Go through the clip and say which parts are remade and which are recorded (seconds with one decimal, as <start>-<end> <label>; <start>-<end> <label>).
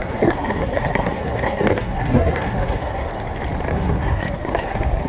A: 0.0-3.1 remade; 3.1-3.7 recorded; 3.7-5.1 remade